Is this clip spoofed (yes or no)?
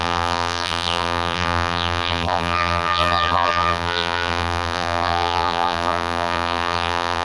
yes